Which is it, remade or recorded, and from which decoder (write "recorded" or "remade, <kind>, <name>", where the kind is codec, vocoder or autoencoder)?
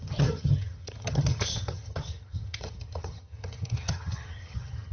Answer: remade, vocoder, HiFi-GAN